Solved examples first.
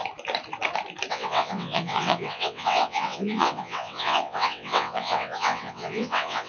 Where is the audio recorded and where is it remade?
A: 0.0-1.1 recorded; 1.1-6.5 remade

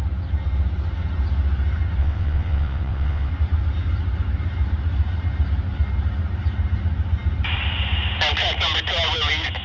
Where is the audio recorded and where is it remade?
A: 0.0-2.0 recorded; 2.0-3.3 remade; 3.3-9.6 recorded

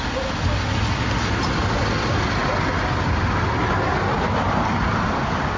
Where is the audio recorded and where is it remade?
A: 0.0-5.6 recorded

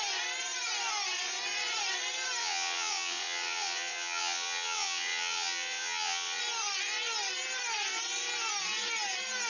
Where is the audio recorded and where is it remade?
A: 0.0-2.4 recorded; 2.4-6.4 remade; 6.4-9.5 recorded